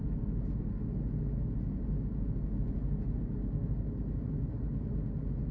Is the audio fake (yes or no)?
no